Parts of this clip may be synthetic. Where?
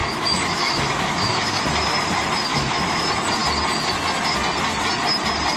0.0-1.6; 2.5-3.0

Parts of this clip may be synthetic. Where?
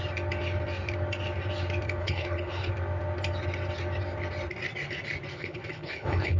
2.0-2.7; 5.3-6.4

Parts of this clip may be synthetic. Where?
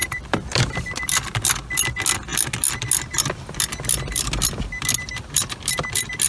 0.0-1.4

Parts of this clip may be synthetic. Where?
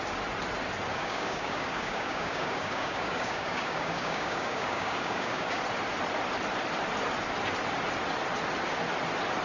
0.9-5.6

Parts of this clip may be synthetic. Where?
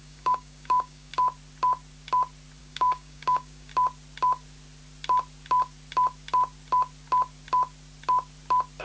0.0-1.1; 2.6-3.7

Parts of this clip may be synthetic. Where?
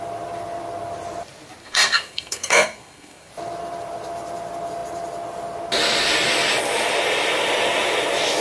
1.6-3.3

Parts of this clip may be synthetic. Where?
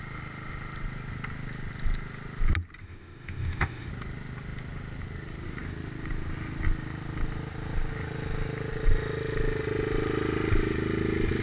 2.8-3.9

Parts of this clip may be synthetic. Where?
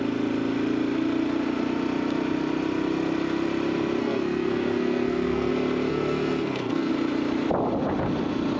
4.0-5.5; 5.9-6.9